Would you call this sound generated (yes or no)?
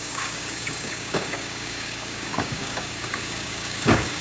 yes